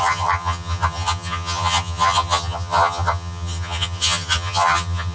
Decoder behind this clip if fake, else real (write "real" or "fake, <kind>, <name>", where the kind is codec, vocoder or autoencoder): fake, vocoder, HiFi-GAN